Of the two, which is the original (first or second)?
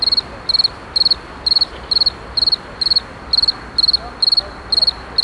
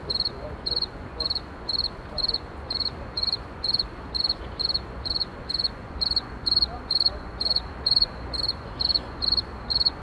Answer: first